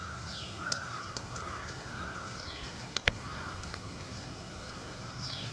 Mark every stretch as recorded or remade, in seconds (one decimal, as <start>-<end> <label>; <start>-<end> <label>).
0.0-5.5 remade